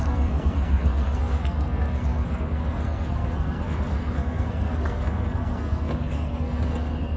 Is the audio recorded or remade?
remade